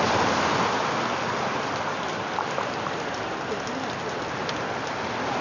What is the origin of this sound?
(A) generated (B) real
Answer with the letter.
B